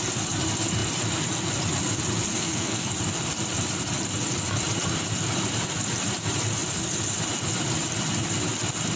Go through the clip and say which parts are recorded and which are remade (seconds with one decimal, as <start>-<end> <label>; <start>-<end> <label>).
0.0-2.3 recorded; 2.3-2.9 remade; 2.9-9.0 recorded